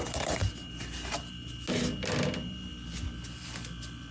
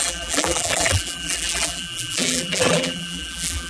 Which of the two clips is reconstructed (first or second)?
second